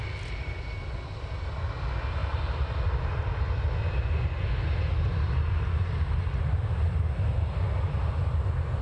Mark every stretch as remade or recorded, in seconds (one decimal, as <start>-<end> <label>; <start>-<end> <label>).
0.0-8.8 recorded